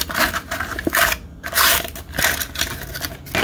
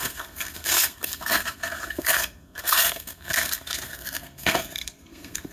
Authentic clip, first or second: first